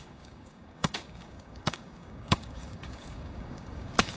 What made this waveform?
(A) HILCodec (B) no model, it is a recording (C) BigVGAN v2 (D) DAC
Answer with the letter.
D